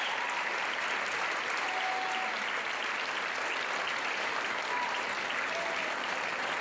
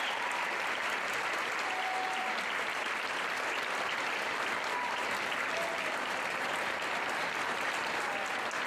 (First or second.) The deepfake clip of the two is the second